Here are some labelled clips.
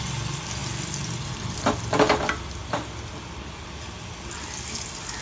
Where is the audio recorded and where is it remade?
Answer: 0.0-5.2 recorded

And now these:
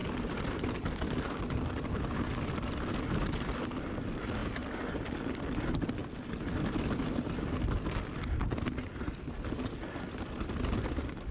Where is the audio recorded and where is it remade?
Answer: 0.0-11.3 recorded

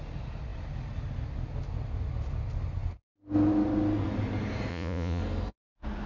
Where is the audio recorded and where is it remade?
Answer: 0.0-4.7 recorded; 4.7-5.2 remade; 5.2-6.1 recorded

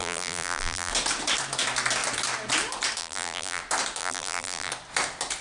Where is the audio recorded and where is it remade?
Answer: 0.0-0.9 remade; 0.9-3.0 recorded; 3.0-3.6 remade; 3.6-4.0 recorded; 4.0-4.7 remade; 4.7-5.4 recorded

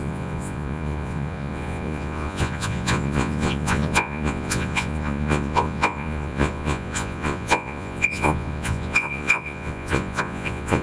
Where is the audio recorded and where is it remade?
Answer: 0.0-10.8 remade

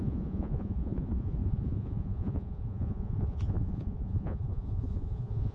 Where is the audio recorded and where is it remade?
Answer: 0.0-5.5 remade

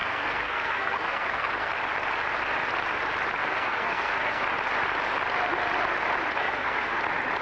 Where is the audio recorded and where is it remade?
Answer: 0.0-1.7 remade; 1.7-3.4 recorded; 3.4-4.4 remade; 4.4-6.4 recorded; 6.4-7.0 remade; 7.0-7.4 recorded

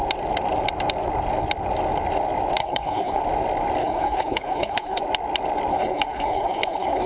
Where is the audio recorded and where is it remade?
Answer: 0.0-2.6 recorded; 2.6-3.2 remade; 3.2-3.8 recorded; 3.8-5.0 remade; 5.0-5.7 recorded; 5.7-7.1 remade